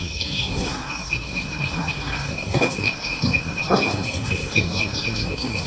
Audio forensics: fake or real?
fake